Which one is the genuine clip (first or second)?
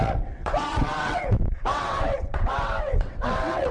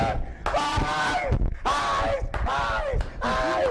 second